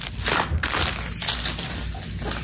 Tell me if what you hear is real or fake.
real